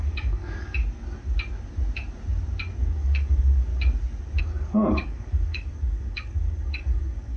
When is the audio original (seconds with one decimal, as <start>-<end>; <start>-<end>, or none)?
0.8-2.8; 3.7-4.4